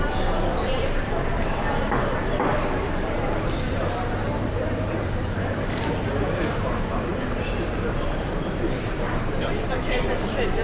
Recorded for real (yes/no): no